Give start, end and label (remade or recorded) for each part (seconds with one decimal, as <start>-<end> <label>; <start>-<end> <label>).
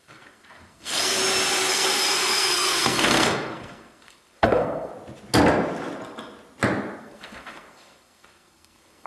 0.0-1.2 remade; 1.2-1.7 recorded; 1.7-4.9 remade; 4.9-7.0 recorded; 7.0-9.1 remade